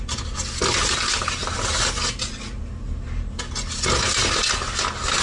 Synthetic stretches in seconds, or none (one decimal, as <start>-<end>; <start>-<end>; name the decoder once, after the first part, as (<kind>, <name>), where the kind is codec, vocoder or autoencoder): none